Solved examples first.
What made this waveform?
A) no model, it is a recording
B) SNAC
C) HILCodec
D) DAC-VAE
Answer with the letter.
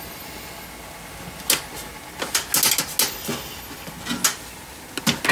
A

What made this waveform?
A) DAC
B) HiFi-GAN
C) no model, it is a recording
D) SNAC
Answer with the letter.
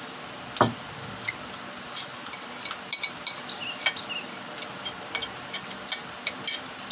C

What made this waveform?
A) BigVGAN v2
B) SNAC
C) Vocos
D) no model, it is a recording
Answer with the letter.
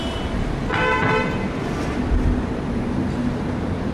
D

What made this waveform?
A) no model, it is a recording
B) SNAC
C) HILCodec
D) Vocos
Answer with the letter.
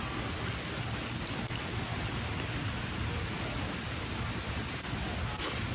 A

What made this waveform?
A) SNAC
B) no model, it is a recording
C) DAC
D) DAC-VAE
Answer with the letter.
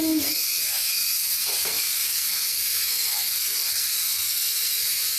A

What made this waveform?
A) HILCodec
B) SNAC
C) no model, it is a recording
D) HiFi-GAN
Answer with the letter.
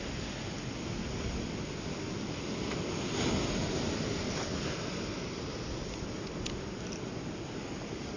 C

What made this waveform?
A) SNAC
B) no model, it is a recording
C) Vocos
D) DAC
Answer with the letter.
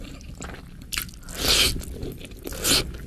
B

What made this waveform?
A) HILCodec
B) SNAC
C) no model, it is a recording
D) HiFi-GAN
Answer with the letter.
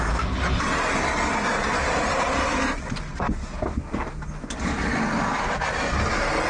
C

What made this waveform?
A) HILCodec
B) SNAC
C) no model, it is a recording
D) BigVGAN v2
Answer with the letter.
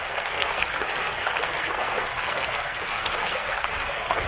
B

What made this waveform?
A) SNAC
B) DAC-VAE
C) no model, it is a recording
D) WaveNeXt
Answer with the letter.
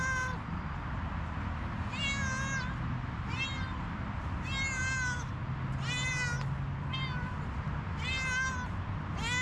C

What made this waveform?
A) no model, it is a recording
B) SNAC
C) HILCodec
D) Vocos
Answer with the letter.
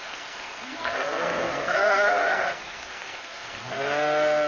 B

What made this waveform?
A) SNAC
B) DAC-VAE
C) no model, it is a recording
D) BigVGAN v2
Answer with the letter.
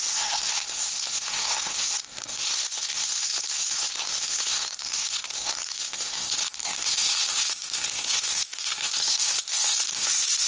A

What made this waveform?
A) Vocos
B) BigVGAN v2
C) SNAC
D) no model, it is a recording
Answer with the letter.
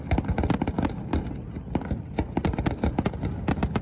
D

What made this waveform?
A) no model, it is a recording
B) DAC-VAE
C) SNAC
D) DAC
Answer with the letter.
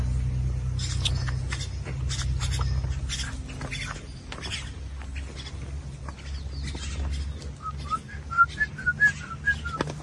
A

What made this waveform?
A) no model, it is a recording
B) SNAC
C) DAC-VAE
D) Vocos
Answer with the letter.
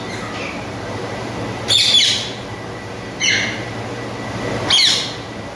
A